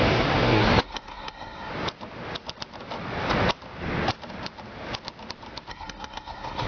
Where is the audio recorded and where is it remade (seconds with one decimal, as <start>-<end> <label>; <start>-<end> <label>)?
0.0-1.7 remade; 1.7-5.7 recorded; 5.7-6.7 remade